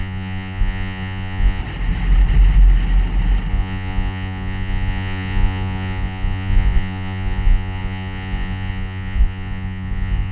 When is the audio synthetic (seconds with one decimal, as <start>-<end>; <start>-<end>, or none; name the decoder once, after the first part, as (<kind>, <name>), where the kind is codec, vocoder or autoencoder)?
0.0-1.6 (vocoder, Vocos); 3.5-10.3